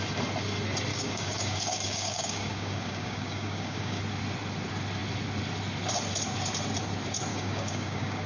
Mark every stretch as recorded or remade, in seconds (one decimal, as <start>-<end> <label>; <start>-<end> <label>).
0.0-0.9 recorded; 0.9-4.0 remade; 4.0-7.3 recorded; 7.3-8.3 remade

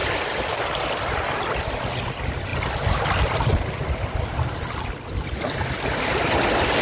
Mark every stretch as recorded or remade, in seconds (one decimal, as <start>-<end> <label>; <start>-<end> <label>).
0.0-1.0 remade; 1.0-2.5 recorded; 2.5-3.5 remade; 3.5-6.8 recorded